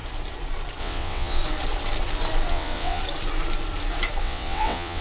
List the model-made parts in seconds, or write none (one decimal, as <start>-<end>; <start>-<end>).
0.8-1.4; 2.5-3.0; 4.2-5.0